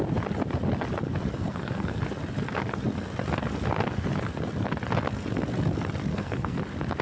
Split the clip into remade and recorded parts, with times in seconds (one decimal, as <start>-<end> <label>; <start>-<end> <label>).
0.0-1.4 recorded; 1.4-2.0 remade; 2.0-6.1 recorded; 6.1-6.6 remade; 6.6-7.0 recorded